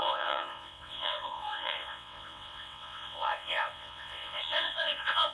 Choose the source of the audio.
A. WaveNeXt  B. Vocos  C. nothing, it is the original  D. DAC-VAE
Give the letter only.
A